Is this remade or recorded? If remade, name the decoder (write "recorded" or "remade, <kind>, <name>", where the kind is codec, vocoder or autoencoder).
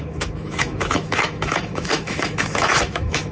remade, autoencoder, DAC-VAE